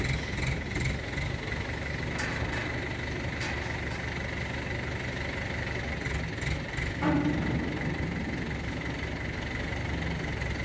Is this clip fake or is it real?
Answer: real